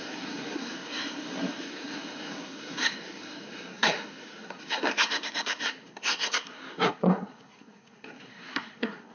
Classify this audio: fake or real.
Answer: fake